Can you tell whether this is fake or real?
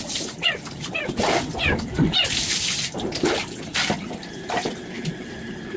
real